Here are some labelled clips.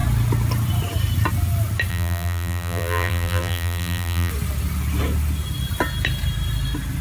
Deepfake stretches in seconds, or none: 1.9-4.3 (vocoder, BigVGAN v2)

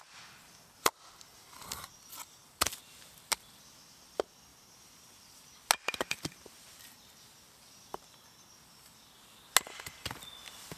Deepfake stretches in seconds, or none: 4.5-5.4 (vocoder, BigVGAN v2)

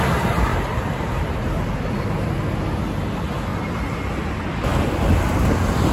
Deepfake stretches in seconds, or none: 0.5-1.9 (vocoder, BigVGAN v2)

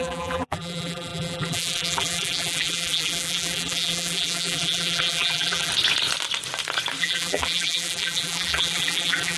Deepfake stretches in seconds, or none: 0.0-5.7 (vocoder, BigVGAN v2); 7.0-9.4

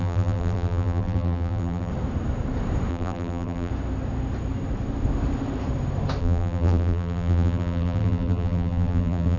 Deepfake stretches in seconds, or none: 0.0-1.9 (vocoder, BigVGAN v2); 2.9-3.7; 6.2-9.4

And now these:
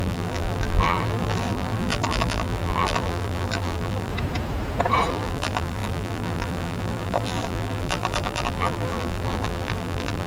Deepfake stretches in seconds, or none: 0.0-4.1 (vocoder, BigVGAN v2); 5.1-10.3

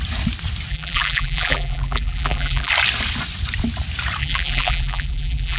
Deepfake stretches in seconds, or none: 0.7-2.7 (vocoder, BigVGAN v2); 4.2-5.6

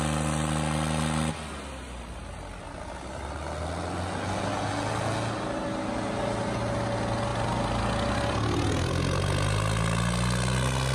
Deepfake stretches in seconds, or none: none